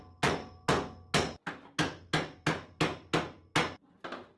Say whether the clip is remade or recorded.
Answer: recorded